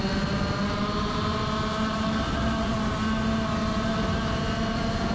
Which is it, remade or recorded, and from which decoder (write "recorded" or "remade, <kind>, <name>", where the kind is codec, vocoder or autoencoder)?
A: recorded